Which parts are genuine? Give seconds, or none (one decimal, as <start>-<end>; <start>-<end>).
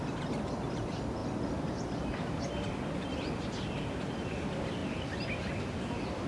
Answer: 0.0-6.3